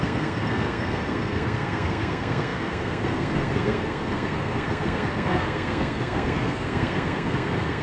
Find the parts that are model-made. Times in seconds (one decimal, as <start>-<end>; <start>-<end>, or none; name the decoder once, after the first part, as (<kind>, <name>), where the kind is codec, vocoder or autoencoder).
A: 0.0-7.8 (codec, SNAC)